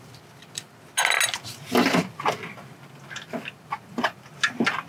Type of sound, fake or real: real